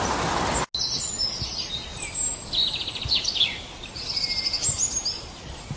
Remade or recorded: recorded